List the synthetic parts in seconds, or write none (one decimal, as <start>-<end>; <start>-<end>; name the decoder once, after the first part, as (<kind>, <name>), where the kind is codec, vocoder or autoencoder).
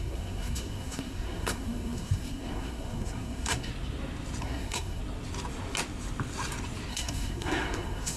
0.0-3.7 (codec, SNAC); 4.4-5.0; 6.9-8.2